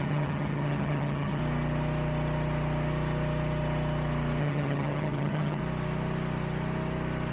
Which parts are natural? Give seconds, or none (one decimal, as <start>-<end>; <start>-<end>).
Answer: 1.4-4.4; 5.6-7.3